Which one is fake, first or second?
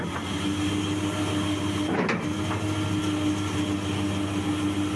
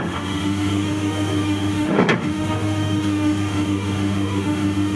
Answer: second